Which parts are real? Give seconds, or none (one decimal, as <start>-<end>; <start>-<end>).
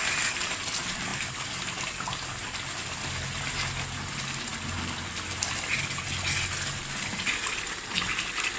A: 0.0-8.6